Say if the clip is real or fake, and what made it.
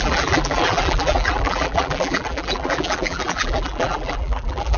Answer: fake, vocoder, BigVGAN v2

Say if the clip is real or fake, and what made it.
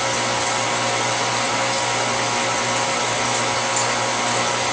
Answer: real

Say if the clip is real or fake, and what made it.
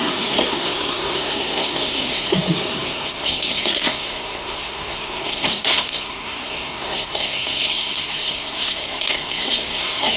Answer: fake, codec, SNAC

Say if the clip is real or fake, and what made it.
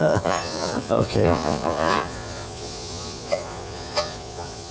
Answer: fake, vocoder, Vocos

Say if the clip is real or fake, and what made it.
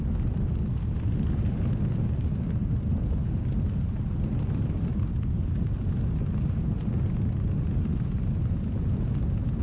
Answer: real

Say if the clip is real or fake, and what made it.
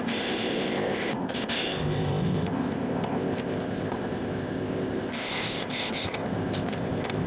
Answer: fake, codec, ZipCodec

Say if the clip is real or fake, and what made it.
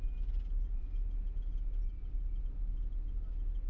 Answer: real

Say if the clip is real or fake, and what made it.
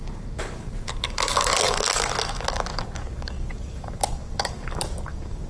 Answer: fake, codec, DAC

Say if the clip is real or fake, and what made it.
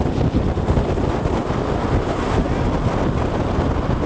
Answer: real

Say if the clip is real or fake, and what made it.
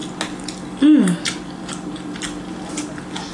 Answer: real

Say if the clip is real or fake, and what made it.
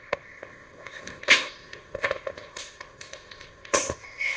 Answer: fake, codec, ZipCodec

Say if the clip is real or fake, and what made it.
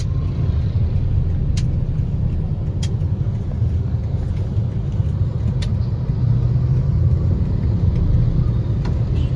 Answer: real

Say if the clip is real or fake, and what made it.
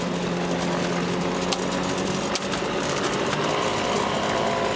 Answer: real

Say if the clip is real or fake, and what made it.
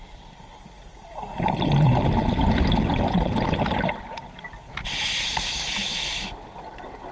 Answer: real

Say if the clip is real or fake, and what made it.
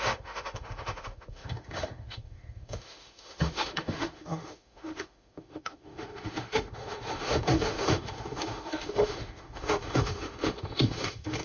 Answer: fake, autoencoder, DAC-VAE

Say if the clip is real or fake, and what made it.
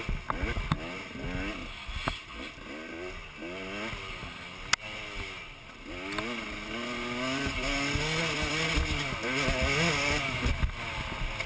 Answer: real